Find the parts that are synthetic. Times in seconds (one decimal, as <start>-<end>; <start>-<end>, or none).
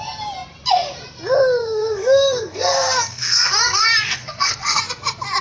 1.6-4.8